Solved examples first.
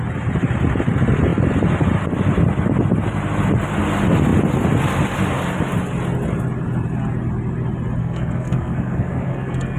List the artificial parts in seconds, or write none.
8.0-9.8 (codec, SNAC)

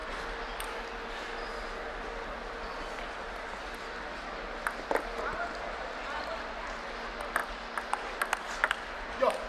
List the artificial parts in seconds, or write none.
none

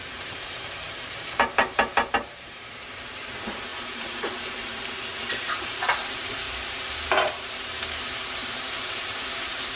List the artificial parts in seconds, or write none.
0.0-9.8 (vocoder, BigVGAN v2)